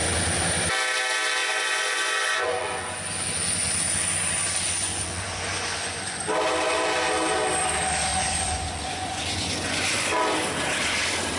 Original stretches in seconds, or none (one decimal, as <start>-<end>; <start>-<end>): 0.0-1.4; 6.2-8.1; 10.1-11.4